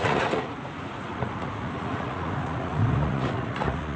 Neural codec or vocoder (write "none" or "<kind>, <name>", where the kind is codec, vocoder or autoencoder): vocoder, Vocos